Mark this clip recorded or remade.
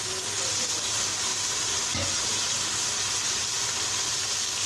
recorded